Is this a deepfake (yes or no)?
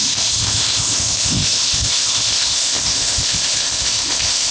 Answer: yes